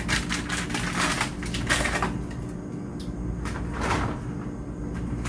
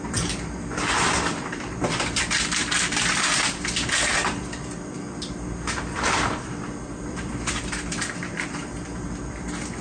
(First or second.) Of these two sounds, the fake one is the second